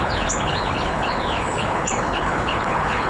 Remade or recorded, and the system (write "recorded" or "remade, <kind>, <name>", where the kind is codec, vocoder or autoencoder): remade, codec, HILCodec